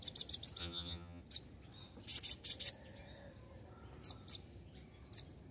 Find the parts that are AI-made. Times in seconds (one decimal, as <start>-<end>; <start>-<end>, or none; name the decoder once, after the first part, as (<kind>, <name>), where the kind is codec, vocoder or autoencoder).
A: 0.6-1.2 (vocoder, HiFi-GAN)